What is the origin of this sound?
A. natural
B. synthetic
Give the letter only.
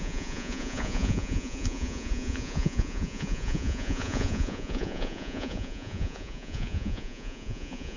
B